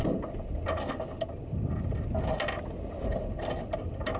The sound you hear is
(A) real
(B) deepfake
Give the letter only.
A